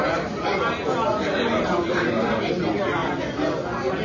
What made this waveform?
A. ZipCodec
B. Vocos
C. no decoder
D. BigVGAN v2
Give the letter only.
C